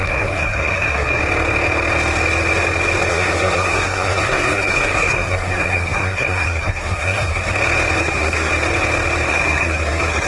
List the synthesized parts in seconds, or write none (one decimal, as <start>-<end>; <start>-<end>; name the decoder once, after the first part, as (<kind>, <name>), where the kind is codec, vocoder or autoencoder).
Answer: 0.0-1.2 (codec, SNAC); 3.1-7.4; 8.0-8.5; 9.3-10.3